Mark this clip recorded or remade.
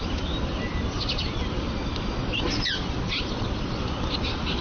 recorded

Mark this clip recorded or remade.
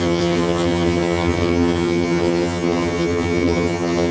remade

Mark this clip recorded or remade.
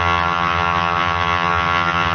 remade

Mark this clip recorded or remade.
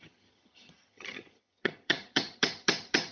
remade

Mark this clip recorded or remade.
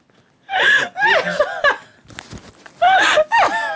recorded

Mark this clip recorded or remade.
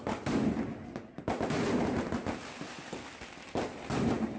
recorded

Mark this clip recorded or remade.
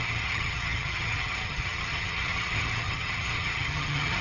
remade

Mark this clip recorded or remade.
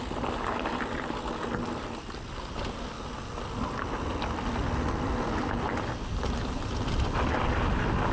recorded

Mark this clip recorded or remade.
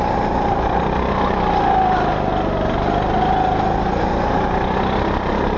recorded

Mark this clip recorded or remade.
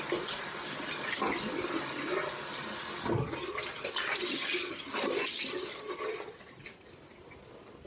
recorded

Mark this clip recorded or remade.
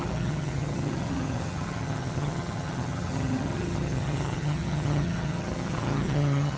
remade